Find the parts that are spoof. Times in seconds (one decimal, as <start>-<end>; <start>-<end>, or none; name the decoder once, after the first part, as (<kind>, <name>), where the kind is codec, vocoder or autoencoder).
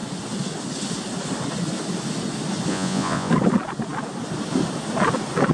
2.7-3.3 (vocoder, Vocos)